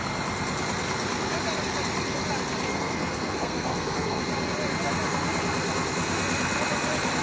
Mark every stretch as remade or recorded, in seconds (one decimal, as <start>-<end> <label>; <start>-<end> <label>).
0.0-2.7 recorded; 2.7-4.2 remade; 4.2-7.2 recorded